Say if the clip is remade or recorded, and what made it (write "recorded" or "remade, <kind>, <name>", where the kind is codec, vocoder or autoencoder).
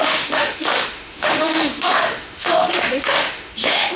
remade, autoencoder, DAC-VAE